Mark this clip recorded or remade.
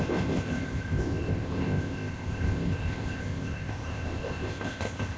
remade